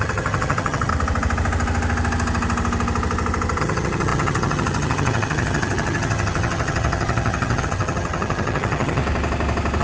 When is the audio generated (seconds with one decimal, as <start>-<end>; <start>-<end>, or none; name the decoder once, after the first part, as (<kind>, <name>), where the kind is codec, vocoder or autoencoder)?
0.0-0.9 (vocoder, HiFi-GAN); 3.6-9.0